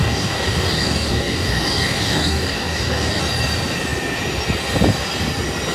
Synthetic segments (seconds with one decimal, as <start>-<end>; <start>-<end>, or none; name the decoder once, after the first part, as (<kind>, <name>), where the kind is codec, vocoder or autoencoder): 0.0-3.2 (codec, DAC)